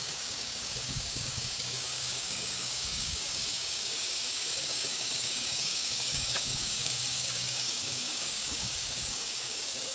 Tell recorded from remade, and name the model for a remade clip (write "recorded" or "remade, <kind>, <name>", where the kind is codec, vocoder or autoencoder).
remade, codec, DAC